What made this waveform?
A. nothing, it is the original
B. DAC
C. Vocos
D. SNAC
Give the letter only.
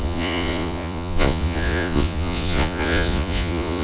C